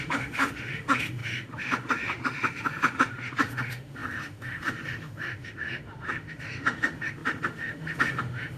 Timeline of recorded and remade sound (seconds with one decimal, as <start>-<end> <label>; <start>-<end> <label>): 0.0-8.6 remade